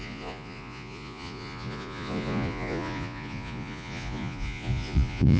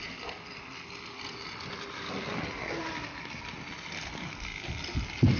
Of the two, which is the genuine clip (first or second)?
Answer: second